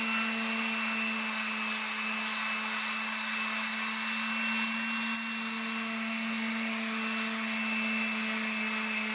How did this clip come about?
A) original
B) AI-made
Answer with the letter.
A